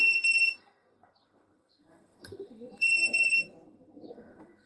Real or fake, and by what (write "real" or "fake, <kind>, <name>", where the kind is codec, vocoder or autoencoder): fake, codec, SNAC